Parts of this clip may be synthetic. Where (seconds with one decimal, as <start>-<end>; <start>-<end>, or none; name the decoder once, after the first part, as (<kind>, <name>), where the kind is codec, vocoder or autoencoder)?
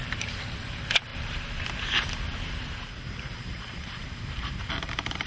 0.0-5.3 (vocoder, BigVGAN v2)